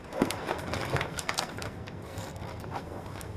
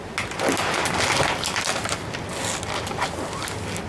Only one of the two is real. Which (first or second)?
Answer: second